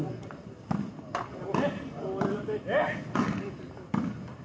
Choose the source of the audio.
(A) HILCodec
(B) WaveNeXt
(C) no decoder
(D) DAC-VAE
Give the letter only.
C